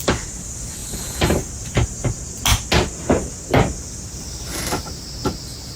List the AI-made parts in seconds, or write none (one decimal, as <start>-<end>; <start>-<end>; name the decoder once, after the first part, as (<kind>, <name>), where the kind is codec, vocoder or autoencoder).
0.8-2.2 (vocoder, BigVGAN v2)